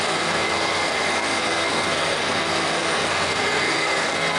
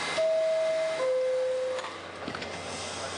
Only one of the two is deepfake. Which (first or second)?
first